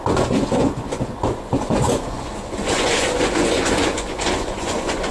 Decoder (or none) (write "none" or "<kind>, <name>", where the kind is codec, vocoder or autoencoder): vocoder, Vocos